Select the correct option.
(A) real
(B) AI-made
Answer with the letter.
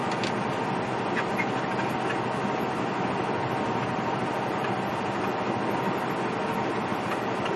A